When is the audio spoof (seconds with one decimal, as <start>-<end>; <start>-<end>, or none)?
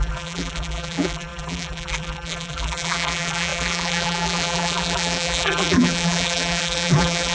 0.0-7.3